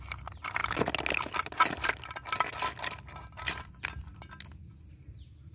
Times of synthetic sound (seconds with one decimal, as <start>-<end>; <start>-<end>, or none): 0.0-0.6; 2.7-4.1